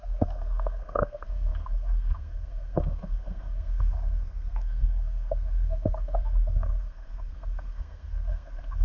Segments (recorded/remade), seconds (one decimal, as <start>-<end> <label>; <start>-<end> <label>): 0.0-8.8 remade